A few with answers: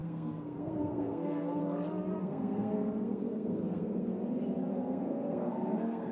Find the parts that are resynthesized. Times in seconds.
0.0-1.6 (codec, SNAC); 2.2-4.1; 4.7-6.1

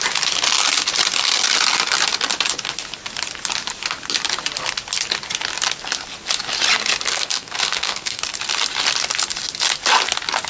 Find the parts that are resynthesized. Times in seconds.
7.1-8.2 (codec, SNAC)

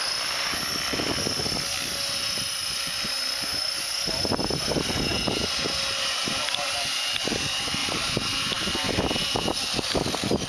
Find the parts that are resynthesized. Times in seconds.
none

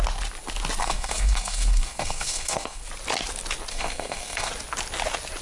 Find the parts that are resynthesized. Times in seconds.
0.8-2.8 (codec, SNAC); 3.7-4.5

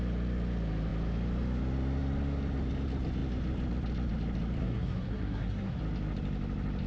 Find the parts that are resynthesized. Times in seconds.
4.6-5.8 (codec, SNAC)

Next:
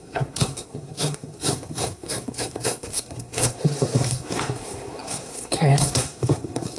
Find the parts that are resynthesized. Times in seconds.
0.0-6.8 (codec, SNAC)

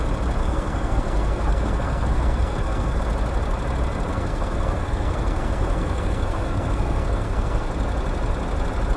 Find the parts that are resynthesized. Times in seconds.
0.4-3.0 (codec, SNAC); 4.1-7.7

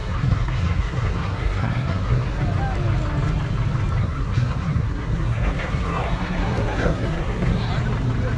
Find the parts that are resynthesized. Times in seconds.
0.0-2.4 (codec, SNAC); 4.0-7.7